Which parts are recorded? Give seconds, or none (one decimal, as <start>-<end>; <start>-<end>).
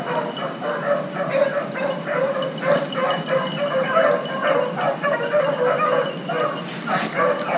0.0-7.6